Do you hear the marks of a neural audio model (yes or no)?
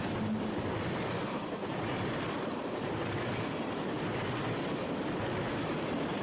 no